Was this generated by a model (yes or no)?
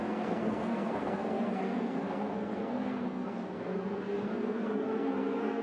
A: yes